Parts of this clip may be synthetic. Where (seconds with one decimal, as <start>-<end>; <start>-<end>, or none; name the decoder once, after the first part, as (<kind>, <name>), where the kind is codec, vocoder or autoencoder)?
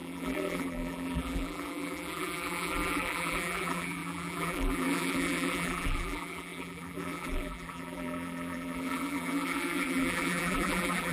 0.0-11.1 (vocoder, BigVGAN v2)